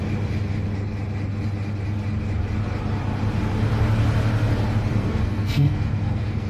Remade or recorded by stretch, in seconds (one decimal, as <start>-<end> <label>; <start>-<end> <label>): 0.0-4.9 recorded; 4.9-6.5 remade